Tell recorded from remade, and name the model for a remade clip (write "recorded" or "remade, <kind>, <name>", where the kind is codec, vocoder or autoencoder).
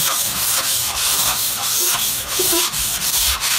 remade, codec, DAC